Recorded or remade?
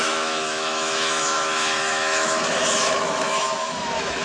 remade